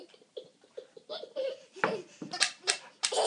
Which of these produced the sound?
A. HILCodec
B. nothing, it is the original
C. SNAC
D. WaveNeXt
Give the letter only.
B